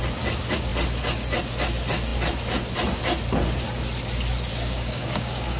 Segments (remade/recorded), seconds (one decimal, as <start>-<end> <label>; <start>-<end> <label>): 0.0-4.5 recorded; 4.5-5.6 remade